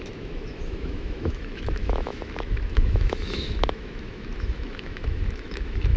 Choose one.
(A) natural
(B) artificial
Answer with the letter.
B